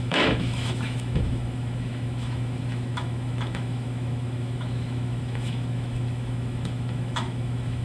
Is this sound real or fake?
fake